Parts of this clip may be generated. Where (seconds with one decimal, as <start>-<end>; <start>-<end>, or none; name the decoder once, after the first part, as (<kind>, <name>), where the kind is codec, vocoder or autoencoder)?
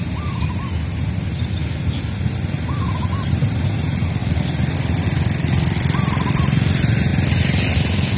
0.0-1.6 (vocoder, BigVGAN v2); 2.2-7.1